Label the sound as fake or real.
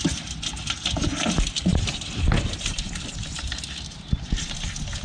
real